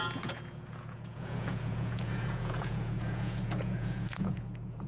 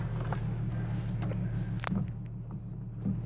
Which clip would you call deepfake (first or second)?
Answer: first